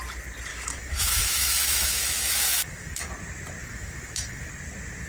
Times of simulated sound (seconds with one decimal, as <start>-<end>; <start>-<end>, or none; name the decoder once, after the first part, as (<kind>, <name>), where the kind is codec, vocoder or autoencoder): 0.5-3.1 (autoencoder, DAC-VAE); 3.6-4.5